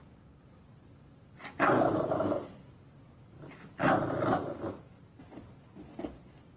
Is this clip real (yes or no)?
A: yes